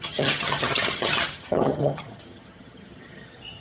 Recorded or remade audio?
remade